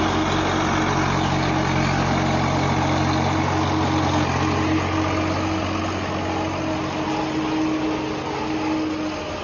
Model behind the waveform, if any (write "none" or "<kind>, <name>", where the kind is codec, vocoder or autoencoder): none